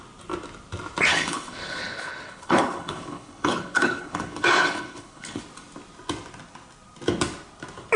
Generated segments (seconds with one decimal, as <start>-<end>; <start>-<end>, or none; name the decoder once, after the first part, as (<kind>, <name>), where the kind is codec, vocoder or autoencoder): 1.1-5.4 (codec, HILCodec)